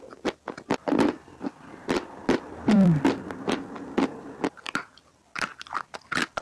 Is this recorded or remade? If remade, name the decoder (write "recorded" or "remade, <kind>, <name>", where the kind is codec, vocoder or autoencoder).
remade, vocoder, BigVGAN v2